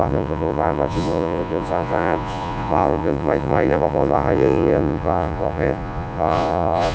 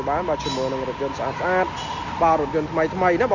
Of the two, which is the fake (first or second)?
first